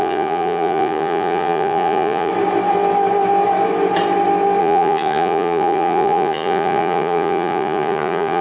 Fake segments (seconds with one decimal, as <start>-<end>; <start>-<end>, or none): 0.0-2.3; 4.6-8.4